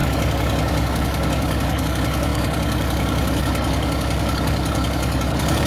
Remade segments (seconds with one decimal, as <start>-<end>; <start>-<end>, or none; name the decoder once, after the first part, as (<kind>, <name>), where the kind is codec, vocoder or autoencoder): 0.0-5.7 (codec, DAC)